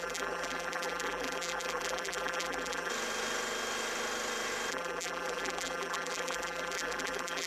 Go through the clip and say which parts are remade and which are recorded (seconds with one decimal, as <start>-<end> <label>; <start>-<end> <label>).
0.0-2.9 remade; 2.9-4.7 recorded; 4.7-7.5 remade